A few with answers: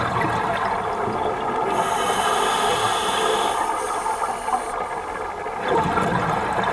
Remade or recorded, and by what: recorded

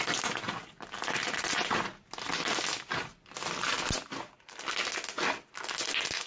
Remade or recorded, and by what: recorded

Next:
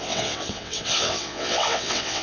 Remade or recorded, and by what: remade, vocoder, WaveNeXt